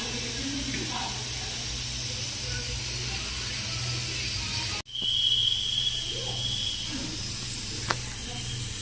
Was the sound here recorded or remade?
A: recorded